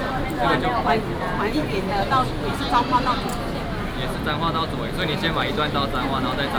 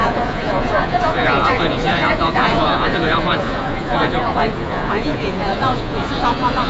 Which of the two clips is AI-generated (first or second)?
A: second